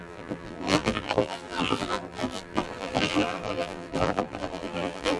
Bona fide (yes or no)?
no